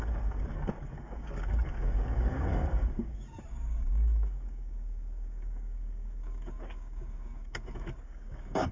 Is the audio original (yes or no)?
no